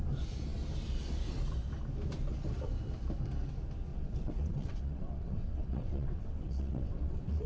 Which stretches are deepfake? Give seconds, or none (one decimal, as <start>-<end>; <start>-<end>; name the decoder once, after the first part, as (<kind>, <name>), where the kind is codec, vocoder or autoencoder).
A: 3.9-7.5 (vocoder, WaveNeXt)